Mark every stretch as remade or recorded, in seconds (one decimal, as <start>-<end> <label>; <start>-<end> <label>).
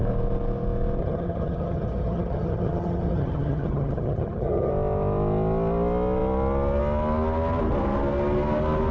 0.0-1.0 recorded; 1.0-4.7 remade; 4.7-8.9 recorded